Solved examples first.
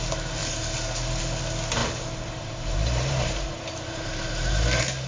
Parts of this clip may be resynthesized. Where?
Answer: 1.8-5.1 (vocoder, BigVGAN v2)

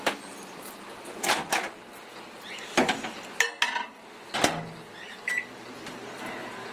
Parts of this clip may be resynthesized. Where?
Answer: none

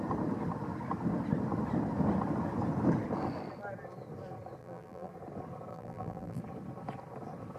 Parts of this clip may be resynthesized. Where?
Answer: 4.6-5.1 (vocoder, BigVGAN v2); 5.7-6.4

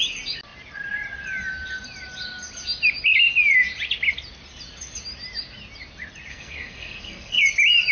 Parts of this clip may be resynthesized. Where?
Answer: 6.3-7.4 (codec, SNAC)

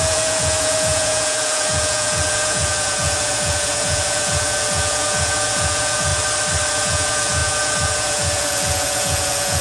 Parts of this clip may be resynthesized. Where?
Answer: 0.0-6.1 (vocoder, Vocos); 6.7-9.6